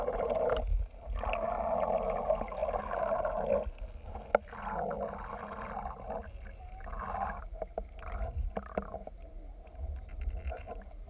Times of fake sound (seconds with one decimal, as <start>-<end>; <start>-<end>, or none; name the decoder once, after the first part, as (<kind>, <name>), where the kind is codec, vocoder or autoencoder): none

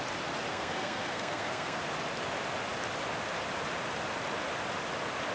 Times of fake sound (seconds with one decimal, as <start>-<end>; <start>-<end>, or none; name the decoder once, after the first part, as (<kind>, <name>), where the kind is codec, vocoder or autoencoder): 0.5-1.8 (codec, SNAC)

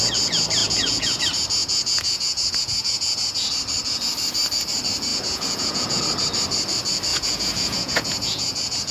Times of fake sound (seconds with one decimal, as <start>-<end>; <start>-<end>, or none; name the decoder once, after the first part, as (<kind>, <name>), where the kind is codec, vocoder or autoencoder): 0.6-1.2 (vocoder, Vocos); 1.6-3.5; 5.1-6.0; 7.1-8.9

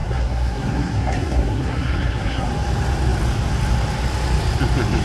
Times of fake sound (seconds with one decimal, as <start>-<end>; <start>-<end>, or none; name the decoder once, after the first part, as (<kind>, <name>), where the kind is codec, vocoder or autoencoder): 0.0-2.5 (codec, SNAC)

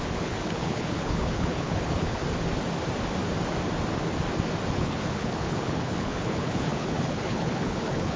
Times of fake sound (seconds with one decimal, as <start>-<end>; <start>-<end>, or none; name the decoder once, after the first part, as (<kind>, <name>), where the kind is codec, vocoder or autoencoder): 0.0-2.2 (codec, HILCodec); 4.7-8.2